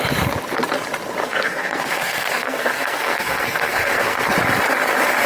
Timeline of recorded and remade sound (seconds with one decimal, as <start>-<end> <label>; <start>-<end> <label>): 0.0-1.2 recorded; 1.2-4.3 remade; 4.3-5.3 recorded